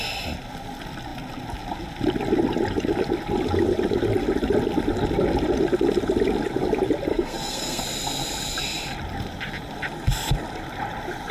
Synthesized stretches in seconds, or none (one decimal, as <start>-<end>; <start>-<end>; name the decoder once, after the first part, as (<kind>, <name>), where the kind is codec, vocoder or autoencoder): 7.1-7.8 (codec, SNAC)